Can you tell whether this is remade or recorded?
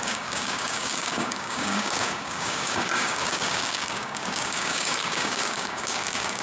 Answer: remade